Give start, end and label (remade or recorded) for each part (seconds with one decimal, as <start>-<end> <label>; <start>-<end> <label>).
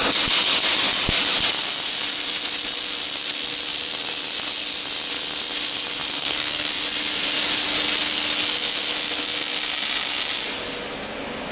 0.0-6.2 recorded; 6.2-6.7 remade; 6.7-11.5 recorded